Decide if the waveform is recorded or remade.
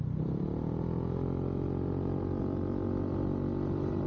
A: recorded